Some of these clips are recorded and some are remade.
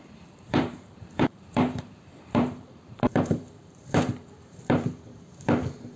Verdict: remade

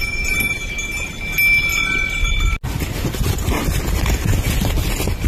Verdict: recorded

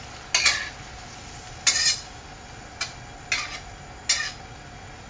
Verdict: recorded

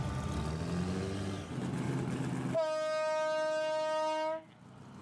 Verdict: recorded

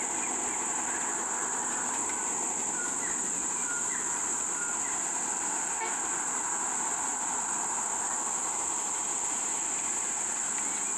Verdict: recorded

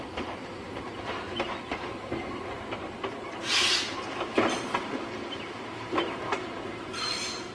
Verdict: recorded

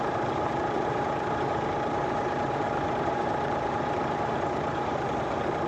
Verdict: remade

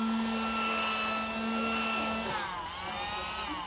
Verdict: recorded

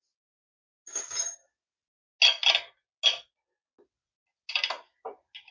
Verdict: recorded